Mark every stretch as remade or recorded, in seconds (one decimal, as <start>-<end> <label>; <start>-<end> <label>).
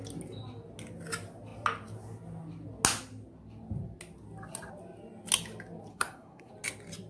0.0-5.9 recorded; 5.9-6.5 remade; 6.5-7.1 recorded